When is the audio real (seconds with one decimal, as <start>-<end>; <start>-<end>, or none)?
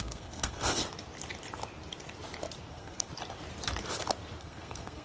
0.8-2.7; 3.1-4.4